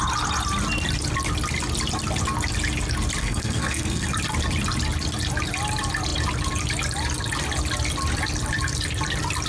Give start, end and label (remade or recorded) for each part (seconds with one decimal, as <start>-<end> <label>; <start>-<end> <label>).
0.0-3.2 recorded; 3.2-4.1 remade; 4.1-9.5 recorded

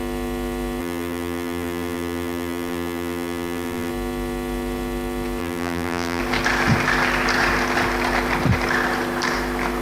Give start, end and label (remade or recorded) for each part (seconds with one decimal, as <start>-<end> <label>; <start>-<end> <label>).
0.0-0.8 recorded; 0.8-3.9 remade; 3.9-5.4 recorded; 5.4-6.2 remade; 6.2-9.8 recorded

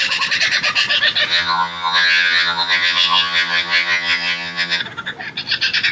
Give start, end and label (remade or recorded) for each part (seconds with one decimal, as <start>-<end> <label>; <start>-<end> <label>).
0.0-1.3 recorded; 1.3-4.8 remade; 4.8-5.9 recorded

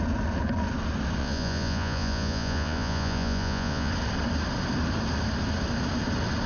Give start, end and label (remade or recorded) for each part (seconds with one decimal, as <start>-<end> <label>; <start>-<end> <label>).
0.0-1.2 recorded; 1.2-3.9 remade; 3.9-6.5 recorded

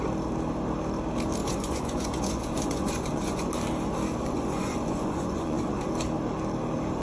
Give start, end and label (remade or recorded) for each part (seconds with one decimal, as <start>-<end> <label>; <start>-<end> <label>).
0.0-1.4 recorded; 1.4-3.5 remade; 3.5-4.1 recorded; 4.1-5.9 remade; 5.9-7.0 recorded

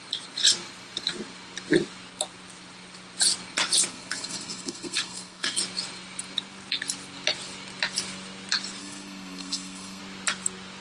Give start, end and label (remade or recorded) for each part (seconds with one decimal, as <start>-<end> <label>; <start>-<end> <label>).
0.0-3.9 recorded; 3.9-5.6 remade; 5.6-8.8 recorded; 8.8-10.0 remade; 10.0-10.8 recorded

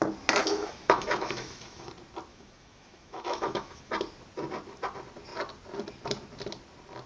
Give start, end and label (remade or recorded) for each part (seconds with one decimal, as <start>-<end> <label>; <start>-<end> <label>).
0.0-0.4 recorded; 0.4-1.9 remade; 1.9-2.3 recorded; 2.3-3.9 remade; 3.9-7.1 recorded